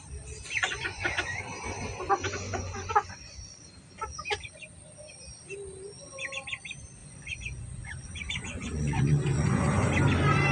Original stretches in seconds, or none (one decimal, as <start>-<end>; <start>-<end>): 0.0-0.6; 1.4-2.5; 3.6-7.0; 9.9-10.5